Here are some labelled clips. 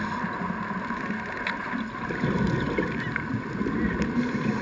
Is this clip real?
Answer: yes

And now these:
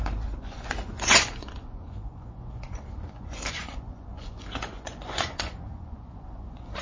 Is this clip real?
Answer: no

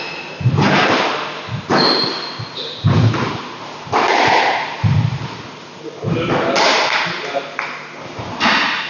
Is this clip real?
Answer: yes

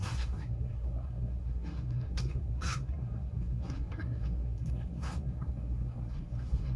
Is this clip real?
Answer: no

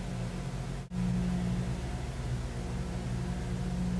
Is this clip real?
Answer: yes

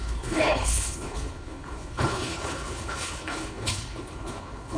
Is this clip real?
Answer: no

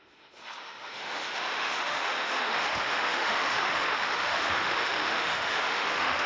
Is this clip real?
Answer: no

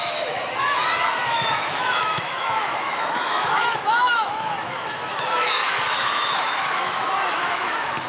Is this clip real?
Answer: no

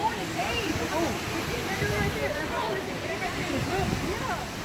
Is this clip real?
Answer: yes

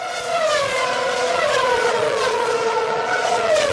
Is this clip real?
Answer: no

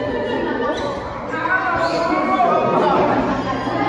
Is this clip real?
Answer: yes